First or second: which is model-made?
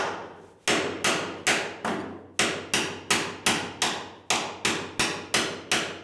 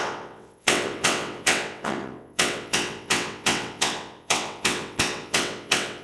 second